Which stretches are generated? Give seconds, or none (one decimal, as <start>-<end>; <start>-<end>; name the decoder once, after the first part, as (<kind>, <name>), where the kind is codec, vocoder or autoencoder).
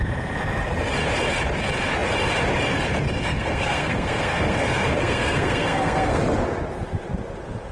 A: 3.2-6.2 (codec, SNAC)